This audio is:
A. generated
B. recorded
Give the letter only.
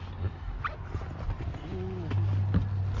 B